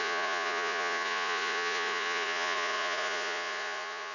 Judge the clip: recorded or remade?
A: remade